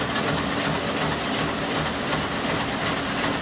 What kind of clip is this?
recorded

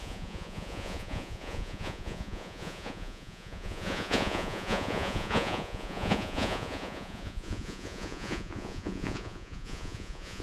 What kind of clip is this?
remade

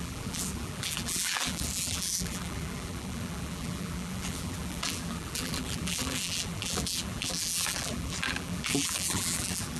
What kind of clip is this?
remade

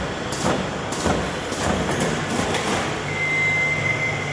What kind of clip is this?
recorded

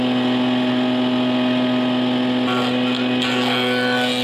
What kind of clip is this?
recorded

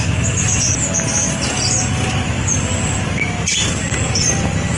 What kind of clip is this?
recorded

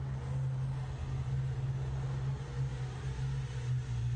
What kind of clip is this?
recorded